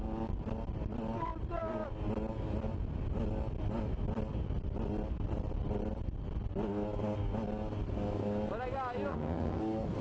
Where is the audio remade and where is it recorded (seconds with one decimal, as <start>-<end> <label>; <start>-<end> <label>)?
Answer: 0.0-9.1 recorded; 9.1-9.6 remade; 9.6-10.0 recorded